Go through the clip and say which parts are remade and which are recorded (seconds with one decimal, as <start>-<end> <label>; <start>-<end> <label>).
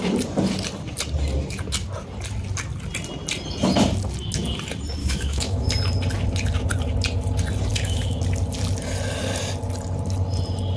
0.0-5.0 recorded; 5.0-5.7 remade; 5.7-7.7 recorded; 7.7-8.2 remade; 8.2-10.8 recorded